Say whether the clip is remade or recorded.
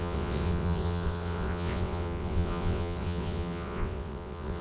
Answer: remade